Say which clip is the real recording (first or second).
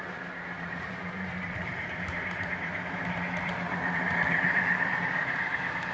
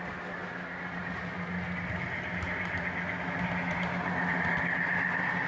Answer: second